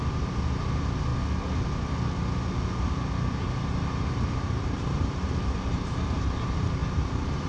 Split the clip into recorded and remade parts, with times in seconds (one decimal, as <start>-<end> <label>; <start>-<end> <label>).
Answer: 0.0-1.1 remade; 1.1-3.3 recorded; 3.3-7.5 remade